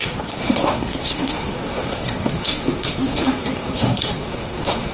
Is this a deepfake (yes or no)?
yes